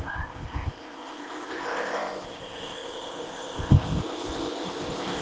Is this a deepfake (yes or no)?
yes